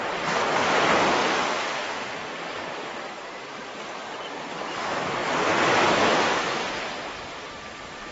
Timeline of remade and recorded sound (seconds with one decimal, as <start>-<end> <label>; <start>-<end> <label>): 0.0-8.1 recorded